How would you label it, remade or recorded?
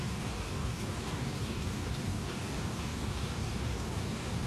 remade